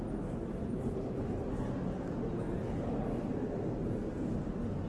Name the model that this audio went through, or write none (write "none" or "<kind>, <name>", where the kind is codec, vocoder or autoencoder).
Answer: none